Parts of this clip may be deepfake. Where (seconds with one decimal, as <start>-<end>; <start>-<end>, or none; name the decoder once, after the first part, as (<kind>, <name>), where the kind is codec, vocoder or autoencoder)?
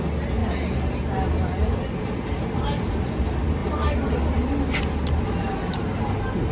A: none